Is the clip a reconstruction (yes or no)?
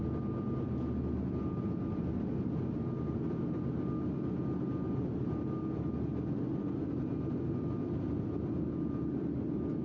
no